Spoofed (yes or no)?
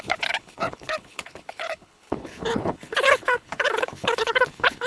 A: yes